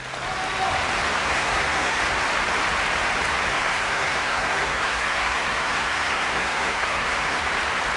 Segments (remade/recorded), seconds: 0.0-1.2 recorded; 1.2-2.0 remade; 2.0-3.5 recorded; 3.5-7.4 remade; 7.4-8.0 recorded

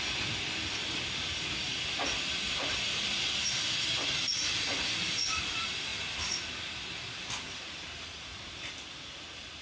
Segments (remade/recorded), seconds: 0.0-1.7 remade; 1.7-5.4 recorded; 5.4-5.9 remade; 5.9-8.1 recorded; 8.1-9.6 remade

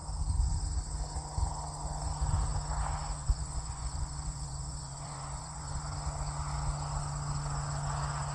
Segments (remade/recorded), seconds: 0.0-3.2 recorded; 3.2-5.8 remade; 5.8-8.3 recorded

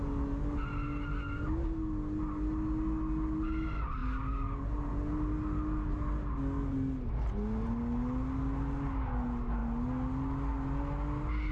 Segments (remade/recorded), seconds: 0.0-11.5 recorded

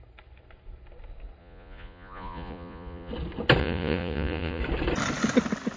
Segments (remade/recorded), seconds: 0.0-1.4 recorded; 1.4-3.1 remade; 3.1-3.6 recorded; 3.6-4.6 remade; 4.6-5.8 recorded